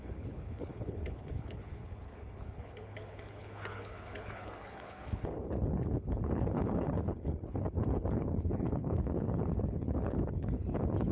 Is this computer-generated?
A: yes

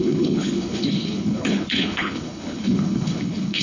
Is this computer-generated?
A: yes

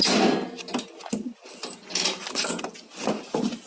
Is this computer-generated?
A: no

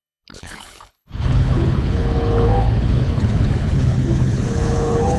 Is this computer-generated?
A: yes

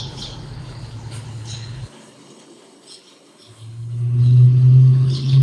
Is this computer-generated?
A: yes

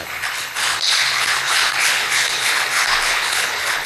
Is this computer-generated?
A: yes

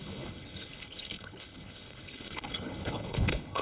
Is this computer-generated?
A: yes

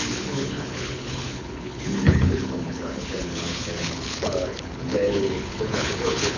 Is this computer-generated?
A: yes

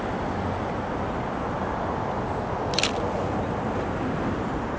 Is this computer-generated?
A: no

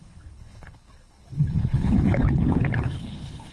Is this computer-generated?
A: yes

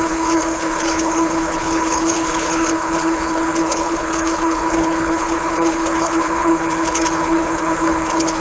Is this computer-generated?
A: yes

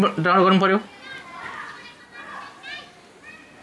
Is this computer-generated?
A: no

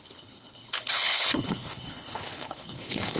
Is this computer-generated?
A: yes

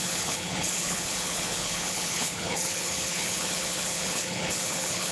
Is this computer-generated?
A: yes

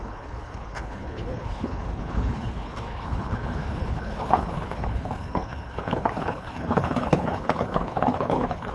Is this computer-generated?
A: yes